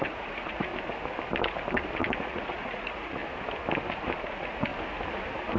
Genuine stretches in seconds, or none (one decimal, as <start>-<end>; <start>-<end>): 0.7-2.2; 3.2-4.3; 4.7-5.6